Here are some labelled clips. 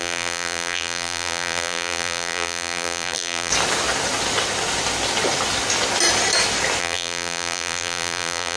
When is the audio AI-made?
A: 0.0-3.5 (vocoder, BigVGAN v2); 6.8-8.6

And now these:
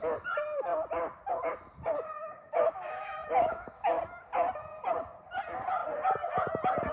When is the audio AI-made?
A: 2.2-4.0 (autoencoder, DAC-VAE)

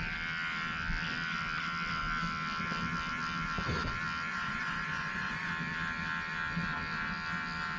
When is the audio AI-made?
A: 4.3-5.5 (vocoder, Vocos)

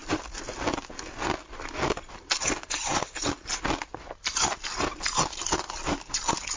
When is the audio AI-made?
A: none

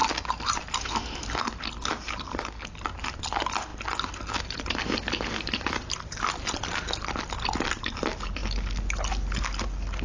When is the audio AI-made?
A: none

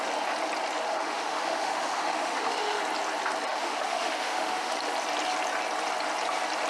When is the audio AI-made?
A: 0.9-2.8 (autoencoder, DAC-VAE); 3.5-4.7